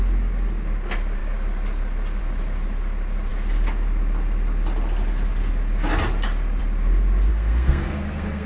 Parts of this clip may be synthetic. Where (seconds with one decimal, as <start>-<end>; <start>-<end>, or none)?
7.3-8.5